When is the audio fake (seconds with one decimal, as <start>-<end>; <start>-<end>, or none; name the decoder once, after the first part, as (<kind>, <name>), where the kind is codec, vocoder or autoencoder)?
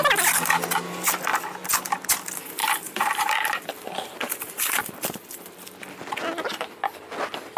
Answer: 2.6-4.8 (vocoder, BigVGAN v2)